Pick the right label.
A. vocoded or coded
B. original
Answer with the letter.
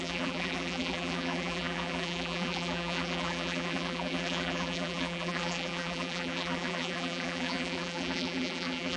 A